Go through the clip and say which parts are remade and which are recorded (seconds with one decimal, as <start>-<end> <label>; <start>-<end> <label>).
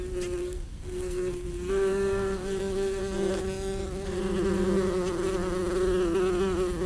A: 0.0-0.4 recorded; 0.4-3.0 remade; 3.0-6.9 recorded